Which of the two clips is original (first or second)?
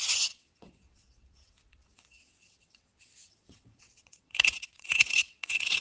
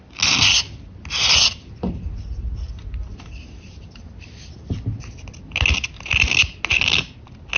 second